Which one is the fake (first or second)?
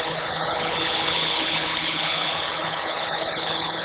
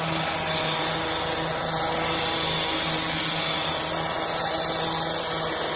first